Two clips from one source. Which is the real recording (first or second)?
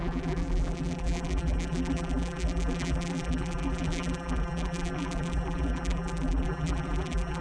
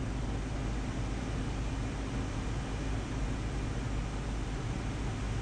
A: second